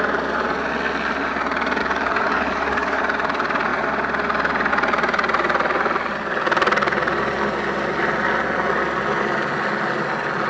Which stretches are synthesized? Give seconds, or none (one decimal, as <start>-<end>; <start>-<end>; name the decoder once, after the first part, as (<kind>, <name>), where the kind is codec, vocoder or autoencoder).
1.8-3.0 (codec, DAC)